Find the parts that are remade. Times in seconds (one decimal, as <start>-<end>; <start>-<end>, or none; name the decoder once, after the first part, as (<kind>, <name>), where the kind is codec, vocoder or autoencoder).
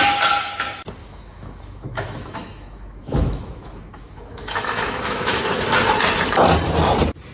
1.0-5.4 (autoencoder, DAC-VAE)